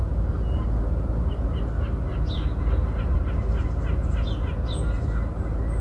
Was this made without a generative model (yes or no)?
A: yes